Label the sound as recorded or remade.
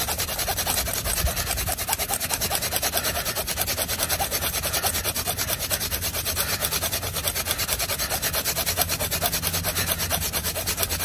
recorded